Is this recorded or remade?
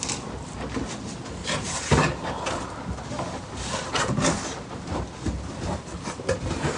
recorded